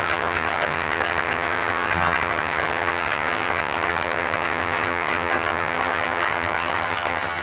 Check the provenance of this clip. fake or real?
fake